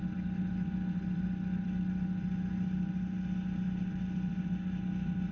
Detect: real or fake real